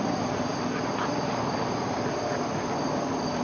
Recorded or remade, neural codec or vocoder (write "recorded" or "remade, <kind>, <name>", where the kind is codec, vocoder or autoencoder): recorded